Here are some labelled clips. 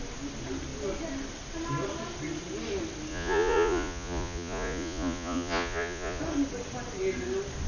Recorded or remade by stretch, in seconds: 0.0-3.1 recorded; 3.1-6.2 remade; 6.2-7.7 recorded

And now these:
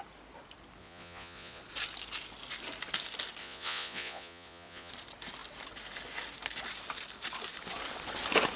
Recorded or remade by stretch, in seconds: 0.0-0.8 recorded; 0.8-1.6 remade; 1.6-3.4 recorded; 3.4-4.9 remade; 4.9-8.6 recorded

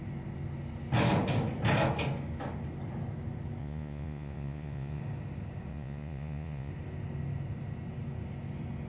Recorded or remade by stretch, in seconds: 0.0-3.6 recorded; 3.6-5.0 remade; 5.0-5.7 recorded; 5.7-6.7 remade; 6.7-8.9 recorded

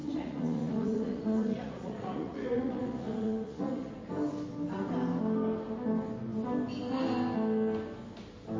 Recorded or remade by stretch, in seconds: 0.0-3.9 remade; 3.9-8.6 recorded

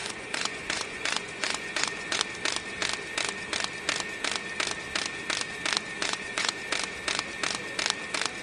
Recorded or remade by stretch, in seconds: 0.0-2.2 remade; 2.2-6.0 recorded; 6.0-6.6 remade; 6.6-8.4 recorded

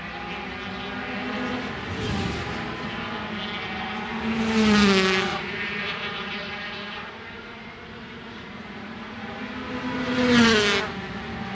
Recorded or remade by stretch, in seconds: 0.0-5.3 recorded; 5.3-9.4 remade; 9.4-11.5 recorded